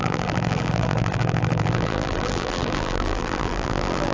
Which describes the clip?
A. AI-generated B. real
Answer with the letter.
A